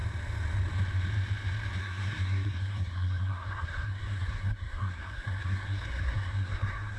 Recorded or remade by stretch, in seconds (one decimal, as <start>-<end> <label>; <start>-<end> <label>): 0.0-1.8 recorded; 1.8-7.0 remade